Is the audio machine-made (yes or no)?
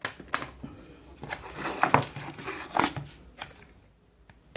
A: no